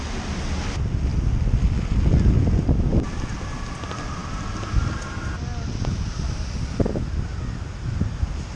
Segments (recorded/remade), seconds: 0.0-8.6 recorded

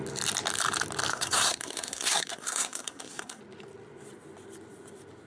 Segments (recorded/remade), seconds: 0.0-1.1 recorded; 1.1-3.4 remade; 3.4-5.3 recorded

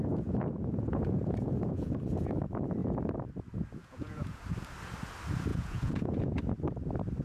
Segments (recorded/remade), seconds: 0.0-2.0 remade; 2.0-3.8 recorded; 3.8-4.4 remade; 4.4-5.5 recorded; 5.5-6.4 remade; 6.4-7.2 recorded

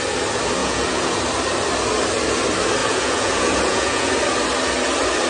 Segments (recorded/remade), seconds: 0.0-0.6 recorded; 0.6-1.2 remade; 1.2-2.8 recorded; 2.8-4.1 remade; 4.1-5.3 recorded

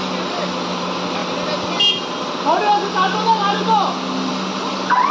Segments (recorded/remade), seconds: 0.0-5.1 recorded